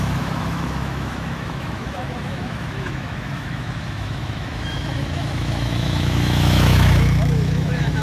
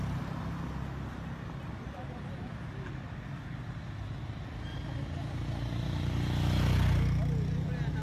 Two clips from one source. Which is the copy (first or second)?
first